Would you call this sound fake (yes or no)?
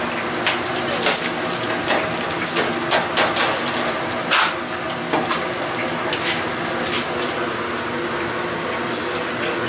no